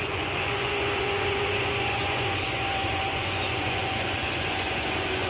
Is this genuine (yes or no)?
no